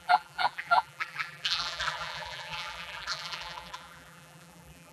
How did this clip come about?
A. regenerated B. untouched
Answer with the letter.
A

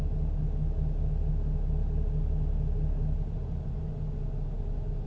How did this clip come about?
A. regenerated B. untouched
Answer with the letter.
B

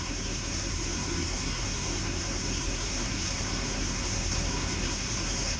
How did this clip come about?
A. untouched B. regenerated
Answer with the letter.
B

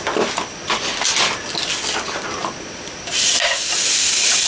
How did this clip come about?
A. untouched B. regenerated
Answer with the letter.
A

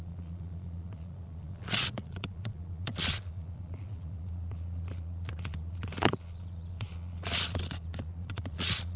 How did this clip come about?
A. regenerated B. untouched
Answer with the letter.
A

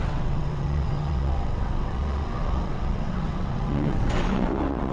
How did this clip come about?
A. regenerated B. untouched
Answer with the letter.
A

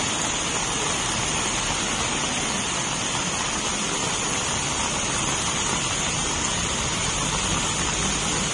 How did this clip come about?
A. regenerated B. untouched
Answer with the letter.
B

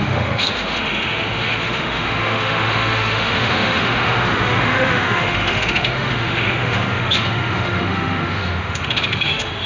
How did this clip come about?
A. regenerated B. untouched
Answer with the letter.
A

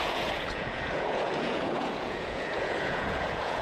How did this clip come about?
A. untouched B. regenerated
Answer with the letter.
B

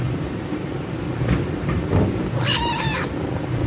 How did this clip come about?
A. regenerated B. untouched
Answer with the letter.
A